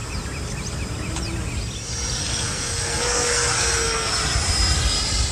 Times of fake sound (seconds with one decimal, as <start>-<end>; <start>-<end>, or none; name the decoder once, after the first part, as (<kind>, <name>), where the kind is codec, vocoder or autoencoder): 2.2-4.1 (codec, SNAC)